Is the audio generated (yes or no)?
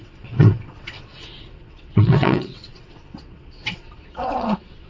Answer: yes